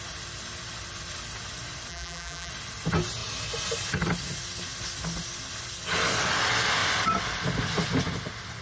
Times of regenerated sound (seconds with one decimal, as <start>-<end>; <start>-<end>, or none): 1.9-2.5